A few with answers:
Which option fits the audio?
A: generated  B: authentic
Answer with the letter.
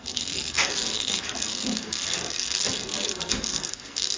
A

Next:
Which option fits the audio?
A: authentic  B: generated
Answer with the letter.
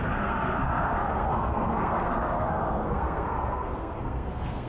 B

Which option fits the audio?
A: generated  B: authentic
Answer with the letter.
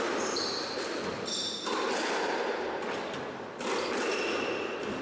B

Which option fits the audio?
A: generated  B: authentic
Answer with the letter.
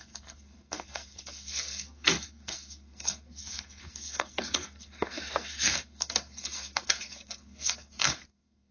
A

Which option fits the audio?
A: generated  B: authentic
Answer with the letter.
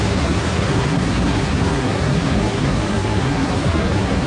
A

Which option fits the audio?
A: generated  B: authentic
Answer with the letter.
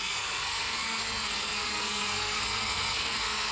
A